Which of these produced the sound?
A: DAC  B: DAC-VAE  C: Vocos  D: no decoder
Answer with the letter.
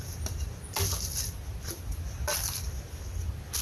D